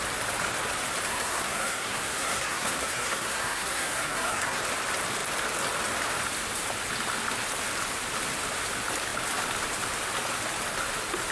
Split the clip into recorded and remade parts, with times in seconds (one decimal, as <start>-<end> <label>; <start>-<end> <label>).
0.0-1.1 recorded; 1.1-4.6 remade; 4.6-11.3 recorded